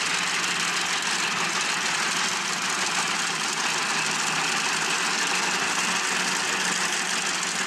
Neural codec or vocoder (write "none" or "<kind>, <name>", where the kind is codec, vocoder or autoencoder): none